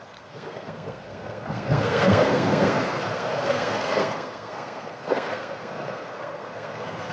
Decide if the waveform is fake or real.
fake